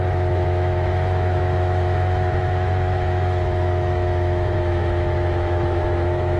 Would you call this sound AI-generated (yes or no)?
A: yes